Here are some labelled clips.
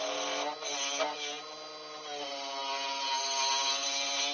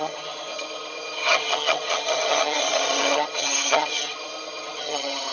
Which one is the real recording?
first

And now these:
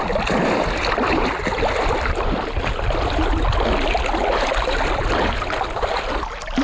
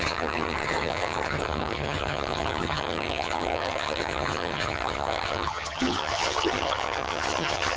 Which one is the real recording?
first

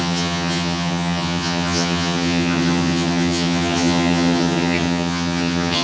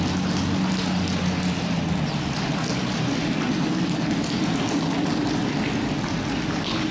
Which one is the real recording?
second